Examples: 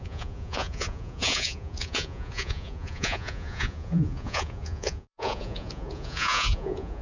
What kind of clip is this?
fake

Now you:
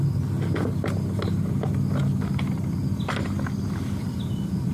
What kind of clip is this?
real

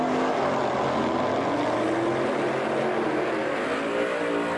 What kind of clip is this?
real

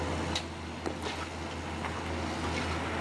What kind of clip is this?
real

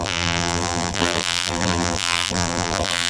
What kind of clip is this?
fake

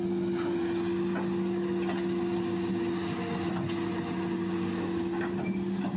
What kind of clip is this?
real